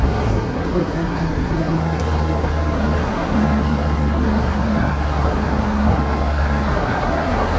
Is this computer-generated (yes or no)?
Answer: yes